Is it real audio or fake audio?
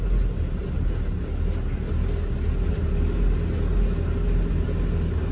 real